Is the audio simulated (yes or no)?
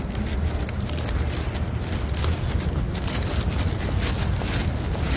no